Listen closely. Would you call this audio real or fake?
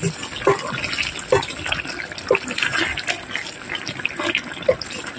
real